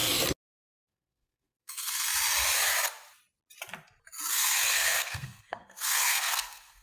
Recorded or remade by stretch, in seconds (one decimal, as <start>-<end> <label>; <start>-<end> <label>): 0.0-0.7 recorded; 0.7-2.1 remade; 2.1-4.3 recorded; 4.3-6.8 remade